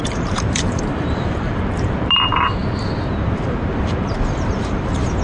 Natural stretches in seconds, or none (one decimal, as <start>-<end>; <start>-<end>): none